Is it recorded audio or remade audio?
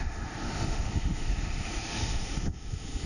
remade